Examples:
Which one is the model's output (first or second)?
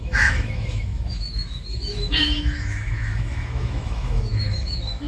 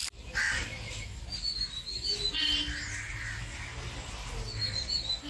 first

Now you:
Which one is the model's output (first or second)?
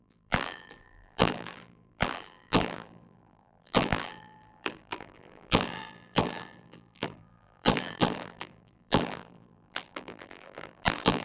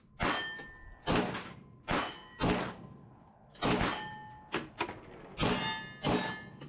first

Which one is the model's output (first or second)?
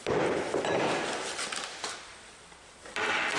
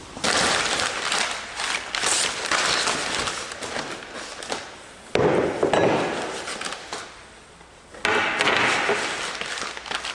first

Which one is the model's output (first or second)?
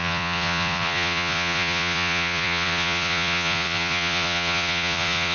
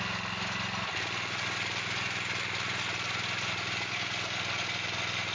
first